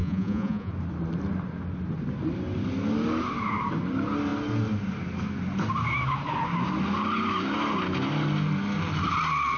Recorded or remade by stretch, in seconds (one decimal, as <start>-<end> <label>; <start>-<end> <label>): 0.0-0.7 remade; 0.7-9.6 recorded